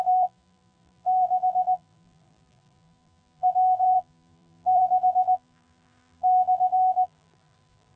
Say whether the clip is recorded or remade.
remade